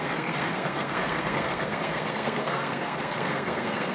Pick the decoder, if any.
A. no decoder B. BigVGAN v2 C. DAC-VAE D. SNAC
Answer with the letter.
D